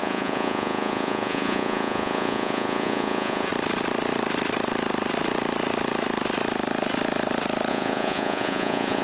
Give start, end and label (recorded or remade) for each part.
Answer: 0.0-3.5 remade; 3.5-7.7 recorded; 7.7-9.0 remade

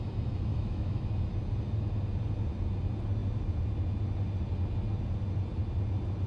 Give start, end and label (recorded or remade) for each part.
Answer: 0.0-0.5 recorded; 0.5-1.1 remade; 1.1-6.3 recorded

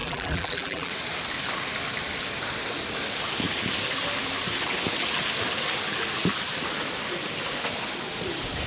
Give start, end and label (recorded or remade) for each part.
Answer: 0.0-0.9 remade; 0.9-8.7 recorded

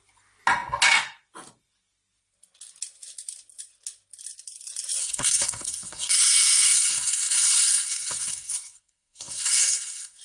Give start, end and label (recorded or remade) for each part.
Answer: 0.0-5.0 recorded; 5.0-10.2 remade

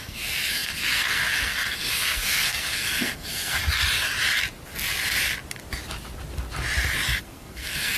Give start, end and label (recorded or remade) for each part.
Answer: 0.0-3.6 remade; 3.6-7.2 recorded; 7.2-8.0 remade

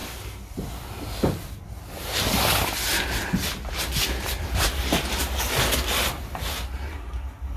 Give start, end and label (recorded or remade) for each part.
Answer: 0.0-7.6 recorded